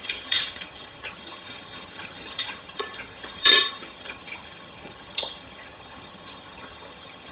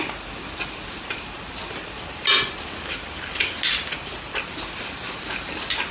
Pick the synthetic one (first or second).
first